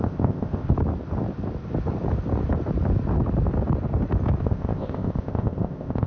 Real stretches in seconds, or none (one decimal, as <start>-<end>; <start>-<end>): 0.7-4.4